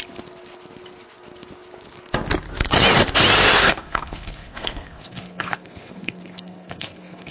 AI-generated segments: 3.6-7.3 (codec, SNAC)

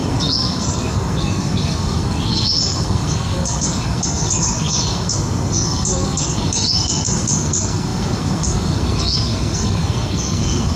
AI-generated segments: 0.0-10.8 (codec, SNAC)

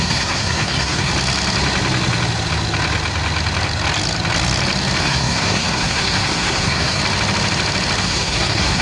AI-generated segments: 0.0-1.1 (codec, SNAC); 5.0-7.0; 8.0-8.8

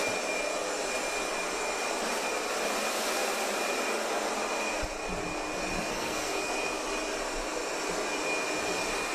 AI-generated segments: 5.9-6.5 (codec, SNAC)

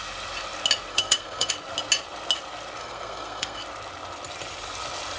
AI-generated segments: 0.9-1.5 (codec, SNAC); 2.8-3.6

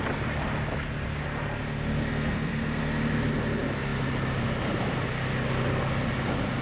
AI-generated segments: 2.1-2.8 (codec, SNAC)

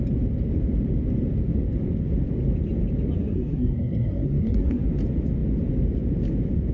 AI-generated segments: 3.2-4.8 (codec, SNAC)